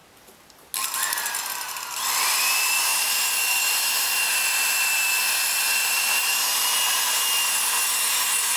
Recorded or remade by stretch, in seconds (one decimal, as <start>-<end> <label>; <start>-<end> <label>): 0.0-1.3 recorded; 1.3-8.6 remade